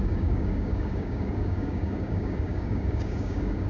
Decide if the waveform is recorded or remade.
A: remade